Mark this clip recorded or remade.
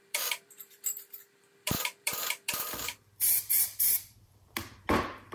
remade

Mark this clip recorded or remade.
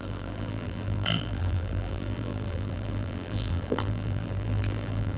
remade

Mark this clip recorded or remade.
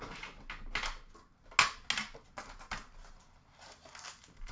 recorded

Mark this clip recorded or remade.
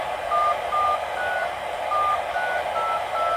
recorded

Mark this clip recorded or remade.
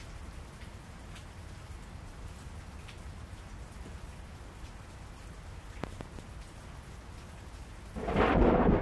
recorded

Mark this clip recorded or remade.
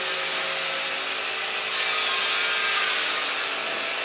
recorded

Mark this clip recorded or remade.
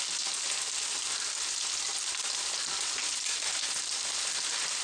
recorded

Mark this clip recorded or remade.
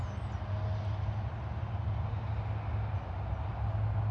recorded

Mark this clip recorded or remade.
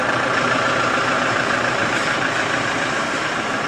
remade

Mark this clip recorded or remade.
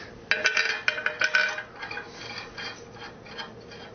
recorded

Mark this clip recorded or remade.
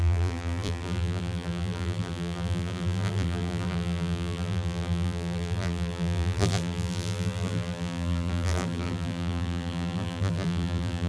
remade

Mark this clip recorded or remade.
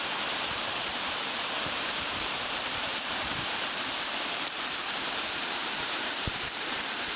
remade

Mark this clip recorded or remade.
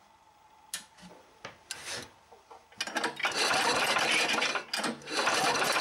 recorded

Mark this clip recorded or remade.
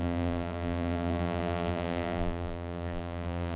remade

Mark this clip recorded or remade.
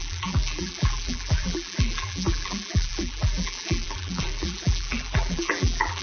remade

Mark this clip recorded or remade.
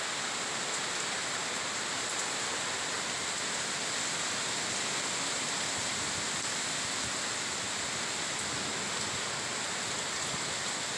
recorded